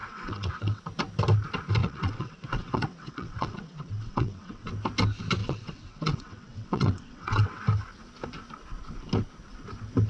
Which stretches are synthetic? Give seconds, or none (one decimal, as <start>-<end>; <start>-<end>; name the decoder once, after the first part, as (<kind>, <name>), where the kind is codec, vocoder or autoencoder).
0.0-0.8 (vocoder, WaveNeXt); 1.8-4.7; 5.4-7.6